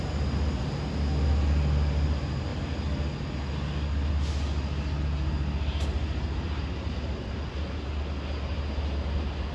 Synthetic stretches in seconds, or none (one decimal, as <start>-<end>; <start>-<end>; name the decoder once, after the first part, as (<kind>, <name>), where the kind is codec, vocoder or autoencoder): 6.0-7.3 (vocoder, BigVGAN v2)